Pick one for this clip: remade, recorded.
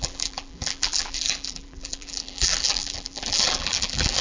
remade